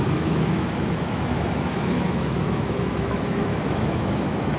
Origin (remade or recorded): remade